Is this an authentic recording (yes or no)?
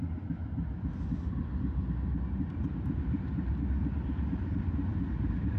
yes